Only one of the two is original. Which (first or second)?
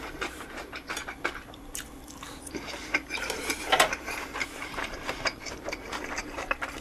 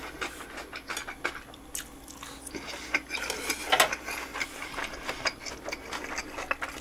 second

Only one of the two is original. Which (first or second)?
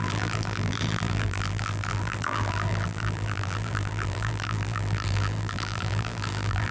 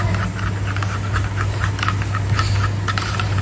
second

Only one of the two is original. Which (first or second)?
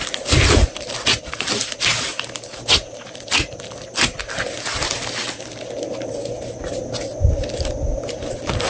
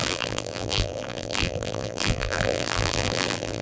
first